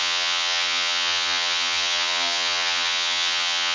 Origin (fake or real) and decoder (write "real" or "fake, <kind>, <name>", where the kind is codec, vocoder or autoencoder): fake, vocoder, HiFi-GAN